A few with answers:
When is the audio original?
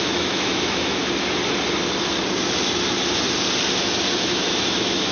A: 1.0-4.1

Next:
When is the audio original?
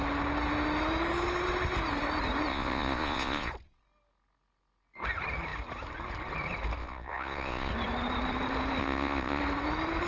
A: 0.0-2.5; 3.5-6.8; 7.7-8.8; 9.4-10.1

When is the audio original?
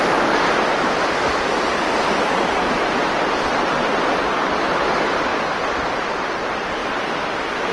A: 0.0-7.7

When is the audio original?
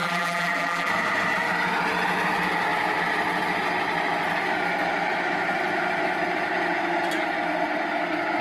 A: 0.9-8.4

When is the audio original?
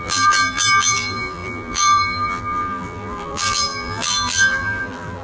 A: none